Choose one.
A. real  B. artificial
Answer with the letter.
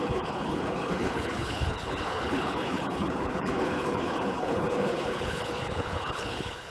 B